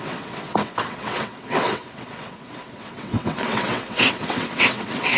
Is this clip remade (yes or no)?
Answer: yes